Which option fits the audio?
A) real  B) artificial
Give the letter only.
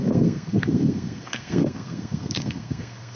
B